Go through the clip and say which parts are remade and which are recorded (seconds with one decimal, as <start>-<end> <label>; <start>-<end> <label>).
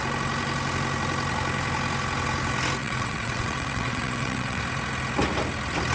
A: 0.0-2.8 recorded; 2.8-4.6 remade; 4.6-5.9 recorded